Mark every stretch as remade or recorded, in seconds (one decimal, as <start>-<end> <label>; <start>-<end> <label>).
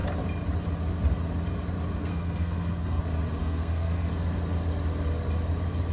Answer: 0.0-2.0 recorded; 2.0-3.0 remade; 3.0-3.4 recorded; 3.4-4.1 remade; 4.1-5.9 recorded